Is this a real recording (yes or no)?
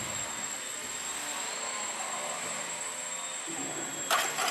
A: yes